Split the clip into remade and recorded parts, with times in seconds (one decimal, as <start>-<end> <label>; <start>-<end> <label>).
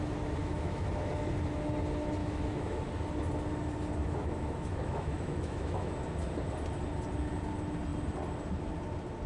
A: 0.0-0.4 recorded; 0.4-1.1 remade; 1.1-2.2 recorded; 2.2-2.8 remade; 2.8-4.0 recorded; 4.0-5.9 remade; 5.9-9.3 recorded